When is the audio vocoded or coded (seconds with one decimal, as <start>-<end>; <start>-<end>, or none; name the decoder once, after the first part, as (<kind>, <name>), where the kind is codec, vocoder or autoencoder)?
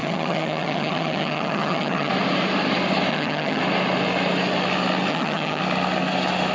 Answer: 0.0-2.1 (vocoder, HiFi-GAN); 3.1-3.6; 5.1-5.6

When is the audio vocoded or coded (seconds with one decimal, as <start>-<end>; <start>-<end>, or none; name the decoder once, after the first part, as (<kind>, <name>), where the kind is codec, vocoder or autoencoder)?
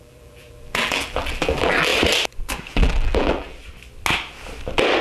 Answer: 0.0-1.9 (vocoder, BigVGAN v2); 2.4-3.6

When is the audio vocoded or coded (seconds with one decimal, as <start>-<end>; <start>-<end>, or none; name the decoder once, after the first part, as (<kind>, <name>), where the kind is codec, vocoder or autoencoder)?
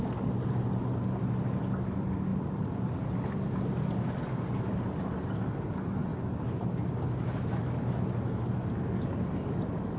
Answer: 2.3-5.2 (vocoder, BigVGAN v2)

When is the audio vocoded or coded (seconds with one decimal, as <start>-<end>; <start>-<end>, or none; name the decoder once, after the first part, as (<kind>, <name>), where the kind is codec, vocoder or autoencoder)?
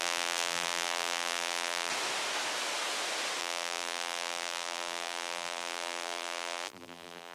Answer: 0.0-1.9 (vocoder, BigVGAN v2); 3.4-7.3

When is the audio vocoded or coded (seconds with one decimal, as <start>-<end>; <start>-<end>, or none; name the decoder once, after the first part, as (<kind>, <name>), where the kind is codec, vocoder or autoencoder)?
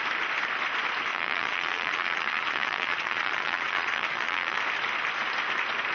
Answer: 1.1-4.6 (vocoder, Vocos)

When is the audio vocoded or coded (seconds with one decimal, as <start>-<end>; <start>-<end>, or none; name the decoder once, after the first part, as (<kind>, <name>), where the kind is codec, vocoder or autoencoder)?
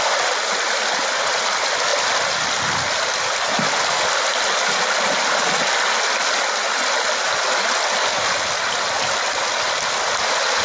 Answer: none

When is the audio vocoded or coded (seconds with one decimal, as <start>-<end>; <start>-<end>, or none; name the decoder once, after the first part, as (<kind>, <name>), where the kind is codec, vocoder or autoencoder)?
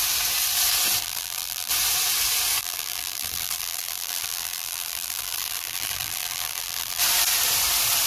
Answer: 1.0-1.7 (vocoder, BigVGAN v2); 2.6-7.0